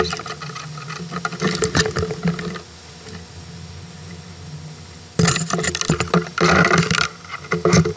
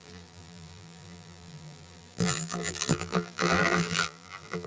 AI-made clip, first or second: second